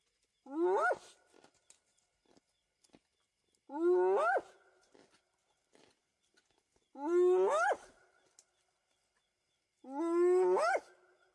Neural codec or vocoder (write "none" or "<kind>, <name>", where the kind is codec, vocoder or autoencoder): none